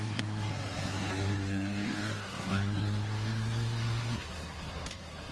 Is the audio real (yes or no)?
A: no